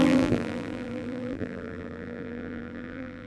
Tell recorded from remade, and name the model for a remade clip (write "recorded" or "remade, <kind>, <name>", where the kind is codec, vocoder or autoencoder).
remade, vocoder, BigVGAN v2